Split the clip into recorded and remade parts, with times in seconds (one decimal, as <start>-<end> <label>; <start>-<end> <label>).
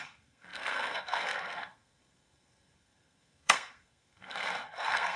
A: 0.0-5.2 remade